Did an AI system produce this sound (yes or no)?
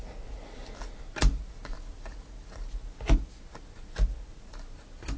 no